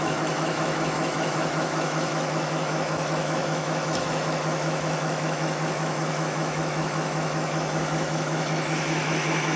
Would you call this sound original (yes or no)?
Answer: no